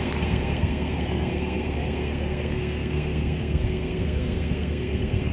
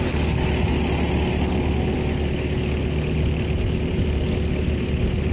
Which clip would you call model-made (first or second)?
first